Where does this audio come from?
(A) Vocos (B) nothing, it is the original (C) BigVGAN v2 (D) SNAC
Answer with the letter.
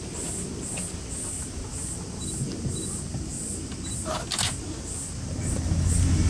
B